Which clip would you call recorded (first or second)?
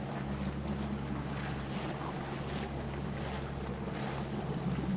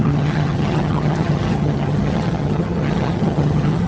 first